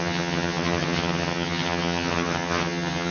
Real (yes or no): no